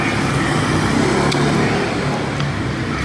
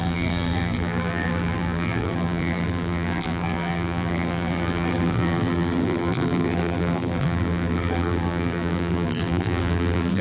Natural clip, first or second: first